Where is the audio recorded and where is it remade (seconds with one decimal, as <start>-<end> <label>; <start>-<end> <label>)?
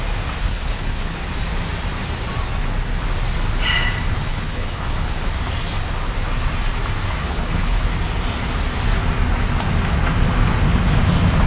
0.0-0.4 recorded; 0.4-1.2 remade; 1.2-4.3 recorded; 4.3-5.3 remade; 5.3-7.2 recorded; 7.2-7.8 remade; 7.8-11.5 recorded